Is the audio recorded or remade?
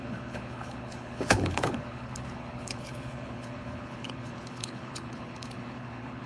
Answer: remade